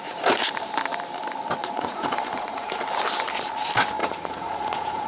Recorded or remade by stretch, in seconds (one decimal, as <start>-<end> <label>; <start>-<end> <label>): 0.0-1.6 recorded; 1.6-2.7 remade; 2.7-4.0 recorded; 4.0-5.1 remade